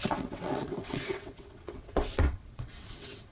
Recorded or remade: remade